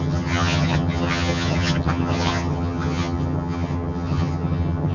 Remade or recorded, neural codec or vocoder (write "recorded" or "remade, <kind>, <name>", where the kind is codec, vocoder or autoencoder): remade, vocoder, HiFi-GAN